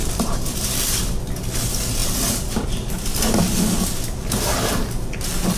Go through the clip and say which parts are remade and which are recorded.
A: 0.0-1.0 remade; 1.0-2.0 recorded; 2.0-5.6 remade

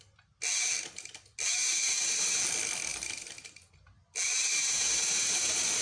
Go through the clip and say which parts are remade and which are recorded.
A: 0.0-5.8 recorded